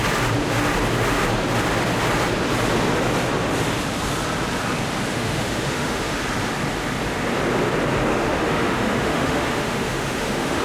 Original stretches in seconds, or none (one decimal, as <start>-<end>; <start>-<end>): 0.0-5.1; 6.2-8.1

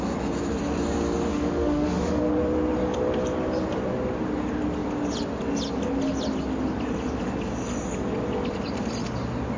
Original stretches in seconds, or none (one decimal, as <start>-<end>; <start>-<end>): 0.0-1.3; 2.2-9.6

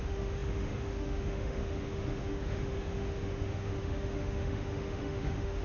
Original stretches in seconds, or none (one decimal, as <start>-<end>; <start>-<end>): none

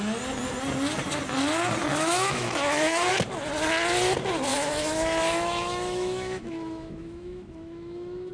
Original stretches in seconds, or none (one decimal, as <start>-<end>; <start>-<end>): 0.0-1.9; 3.1-4.5